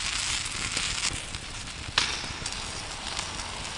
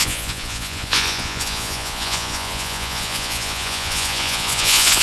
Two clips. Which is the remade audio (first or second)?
second